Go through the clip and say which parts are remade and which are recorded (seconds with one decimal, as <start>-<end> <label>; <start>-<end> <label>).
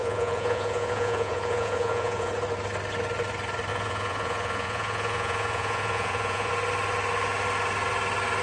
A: 0.0-2.3 remade; 2.3-3.7 recorded; 3.7-6.5 remade; 6.5-8.4 recorded